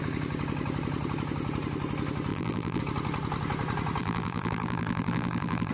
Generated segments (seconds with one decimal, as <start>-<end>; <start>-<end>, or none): 2.3-2.8; 4.0-5.7

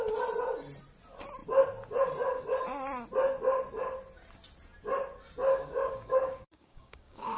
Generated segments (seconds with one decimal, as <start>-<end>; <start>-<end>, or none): 5.5-7.4

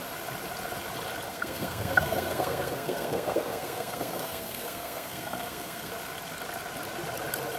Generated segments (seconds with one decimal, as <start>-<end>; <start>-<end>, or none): 1.3-5.9